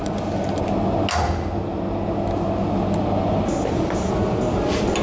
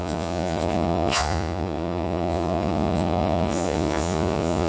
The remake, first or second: second